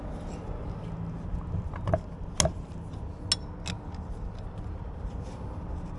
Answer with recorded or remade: recorded